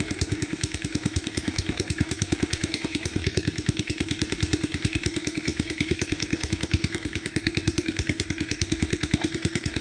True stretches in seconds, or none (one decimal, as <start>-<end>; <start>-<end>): none